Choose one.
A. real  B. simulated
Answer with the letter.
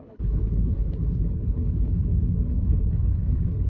B